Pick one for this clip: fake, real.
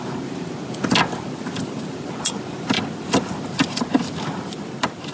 fake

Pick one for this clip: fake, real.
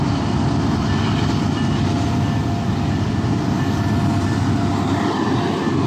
real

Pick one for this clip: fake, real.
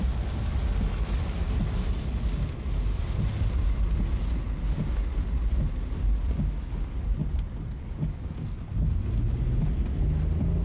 real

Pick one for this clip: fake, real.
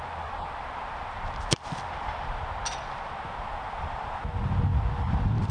real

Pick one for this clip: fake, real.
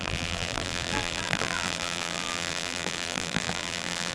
fake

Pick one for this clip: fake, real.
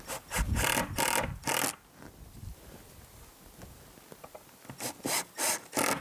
real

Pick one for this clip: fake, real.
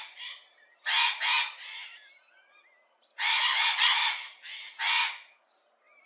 real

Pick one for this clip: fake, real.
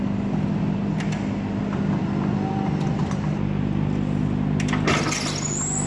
real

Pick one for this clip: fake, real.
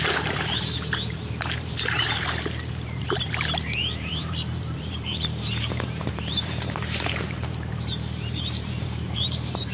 fake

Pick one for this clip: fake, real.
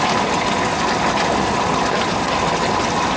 real